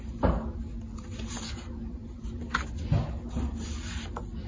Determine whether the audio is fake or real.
real